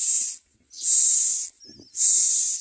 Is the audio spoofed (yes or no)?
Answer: no